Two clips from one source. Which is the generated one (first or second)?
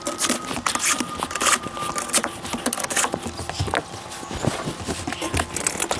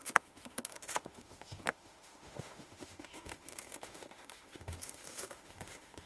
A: second